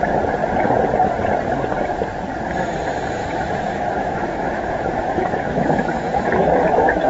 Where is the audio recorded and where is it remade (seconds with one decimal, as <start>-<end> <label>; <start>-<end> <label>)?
0.0-3.2 recorded; 3.2-7.1 remade